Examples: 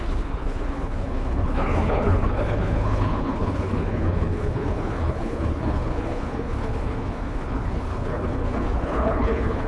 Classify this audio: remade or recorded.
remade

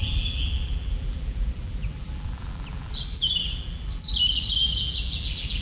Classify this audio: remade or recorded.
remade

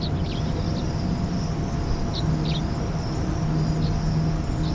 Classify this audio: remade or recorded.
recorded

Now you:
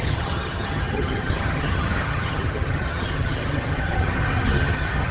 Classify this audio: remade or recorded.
remade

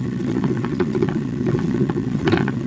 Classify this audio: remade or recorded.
remade